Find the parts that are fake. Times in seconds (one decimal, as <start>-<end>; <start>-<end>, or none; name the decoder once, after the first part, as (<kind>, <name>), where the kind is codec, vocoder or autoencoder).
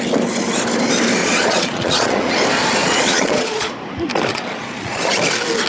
1.2-2.3 (vocoder, Vocos); 2.8-3.7; 4.3-5.2